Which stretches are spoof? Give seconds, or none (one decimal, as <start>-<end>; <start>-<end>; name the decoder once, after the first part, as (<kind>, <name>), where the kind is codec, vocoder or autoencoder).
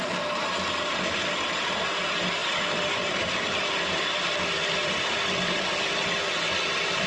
0.0-7.1 (vocoder, BigVGAN v2)